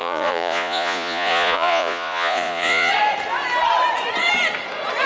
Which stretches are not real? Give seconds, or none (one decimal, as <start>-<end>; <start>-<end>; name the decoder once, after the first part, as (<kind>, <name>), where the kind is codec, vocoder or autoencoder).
0.0-2.9 (vocoder, Vocos)